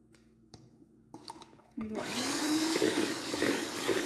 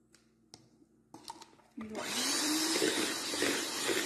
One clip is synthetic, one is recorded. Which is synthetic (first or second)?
first